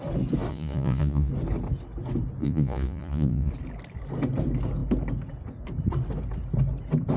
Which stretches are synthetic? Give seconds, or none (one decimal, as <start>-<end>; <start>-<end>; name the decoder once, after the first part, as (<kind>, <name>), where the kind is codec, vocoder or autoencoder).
0.5-1.3 (vocoder, Vocos); 2.4-3.5